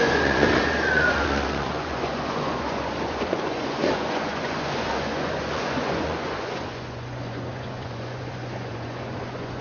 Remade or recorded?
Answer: remade